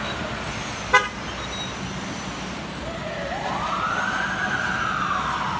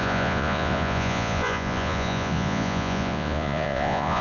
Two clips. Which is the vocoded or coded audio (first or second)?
second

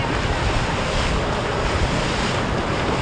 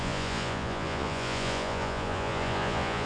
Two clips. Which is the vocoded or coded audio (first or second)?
second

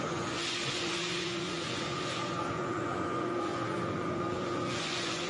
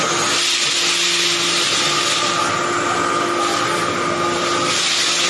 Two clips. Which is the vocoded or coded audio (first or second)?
first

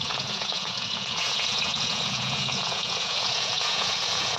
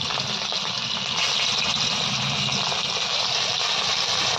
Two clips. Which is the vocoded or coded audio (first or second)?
first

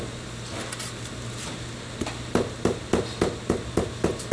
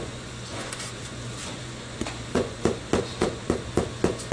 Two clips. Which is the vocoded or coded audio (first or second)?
second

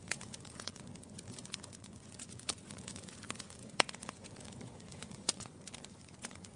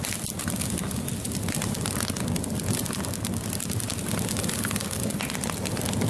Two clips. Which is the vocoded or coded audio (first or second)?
first